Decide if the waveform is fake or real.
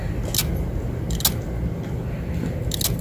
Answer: real